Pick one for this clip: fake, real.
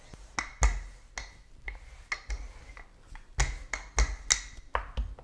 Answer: real